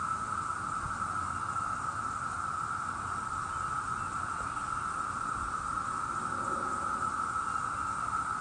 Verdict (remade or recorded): recorded